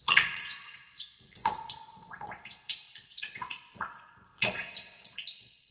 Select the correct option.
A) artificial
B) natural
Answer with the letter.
A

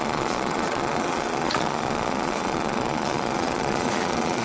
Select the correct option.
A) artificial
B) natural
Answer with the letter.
A